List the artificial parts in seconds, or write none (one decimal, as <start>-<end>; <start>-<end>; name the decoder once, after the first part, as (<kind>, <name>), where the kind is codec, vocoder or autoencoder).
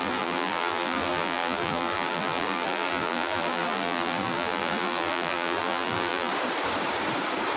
0.0-6.3 (vocoder, BigVGAN v2)